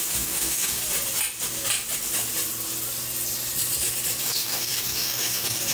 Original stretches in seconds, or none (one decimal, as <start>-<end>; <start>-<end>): 0.8-4.2